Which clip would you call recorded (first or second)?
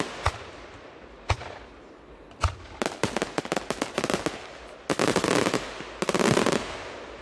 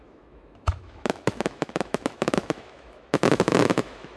first